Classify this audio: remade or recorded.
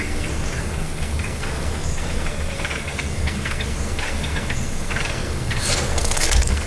remade